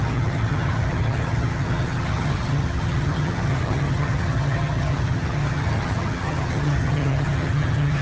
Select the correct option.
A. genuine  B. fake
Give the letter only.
B